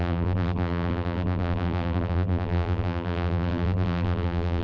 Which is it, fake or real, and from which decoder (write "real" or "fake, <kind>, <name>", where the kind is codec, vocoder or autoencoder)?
fake, vocoder, BigVGAN v2